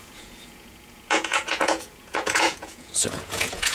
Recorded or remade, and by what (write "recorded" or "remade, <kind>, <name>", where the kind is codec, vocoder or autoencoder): remade, vocoder, Vocos